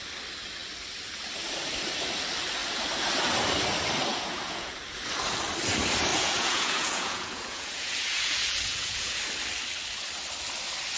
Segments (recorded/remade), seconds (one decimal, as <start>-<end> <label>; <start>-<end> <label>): 0.0-4.1 recorded; 4.1-4.8 remade; 4.8-6.1 recorded; 6.1-9.2 remade; 9.2-11.0 recorded